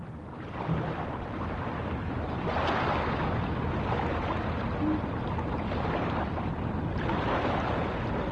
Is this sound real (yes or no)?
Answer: yes